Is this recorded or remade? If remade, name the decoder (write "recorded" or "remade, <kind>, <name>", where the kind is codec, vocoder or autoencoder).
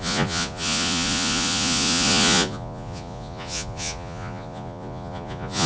remade, vocoder, Vocos